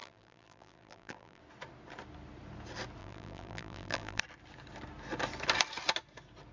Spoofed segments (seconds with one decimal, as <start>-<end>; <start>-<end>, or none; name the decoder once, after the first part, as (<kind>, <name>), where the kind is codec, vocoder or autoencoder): 0.0-1.4 (vocoder, BigVGAN v2); 3.0-4.2